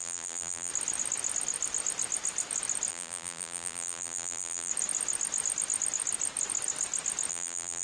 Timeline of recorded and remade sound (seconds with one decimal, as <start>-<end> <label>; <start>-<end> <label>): 0.0-0.7 remade; 0.7-2.9 recorded; 2.9-4.7 remade; 4.7-7.3 recorded; 7.3-7.8 remade